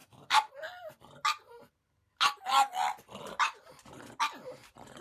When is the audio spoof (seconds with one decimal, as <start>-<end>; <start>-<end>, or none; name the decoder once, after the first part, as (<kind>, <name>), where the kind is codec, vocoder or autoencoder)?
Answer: 0.0-0.5 (codec, SNAC)